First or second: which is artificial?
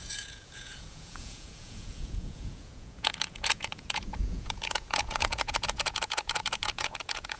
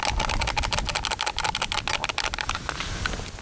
first